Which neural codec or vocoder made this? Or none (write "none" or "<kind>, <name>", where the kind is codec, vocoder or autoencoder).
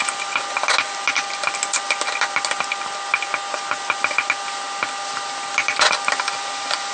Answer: none